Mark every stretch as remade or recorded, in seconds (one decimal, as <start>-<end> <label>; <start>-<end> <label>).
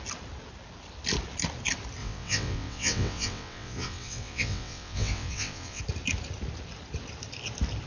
0.0-2.0 recorded; 2.0-5.8 remade; 5.8-7.9 recorded